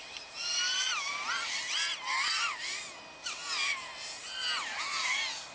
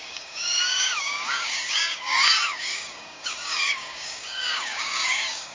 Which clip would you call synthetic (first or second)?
second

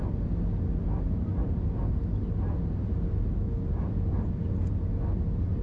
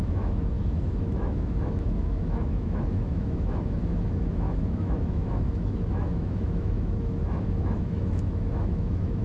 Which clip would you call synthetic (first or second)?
second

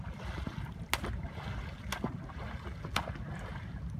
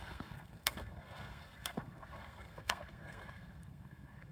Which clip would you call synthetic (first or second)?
second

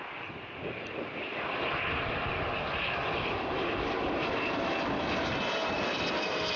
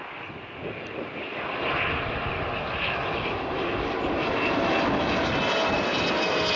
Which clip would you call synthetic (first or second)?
first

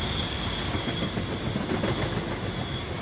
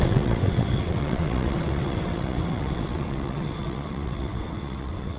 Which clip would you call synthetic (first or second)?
second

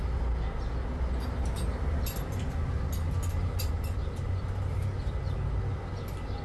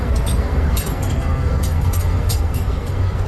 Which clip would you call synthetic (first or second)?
second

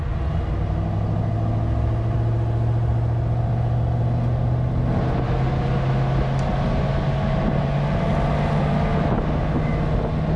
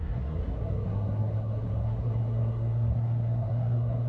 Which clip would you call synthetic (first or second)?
second